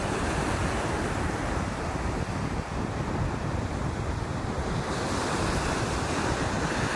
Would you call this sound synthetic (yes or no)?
no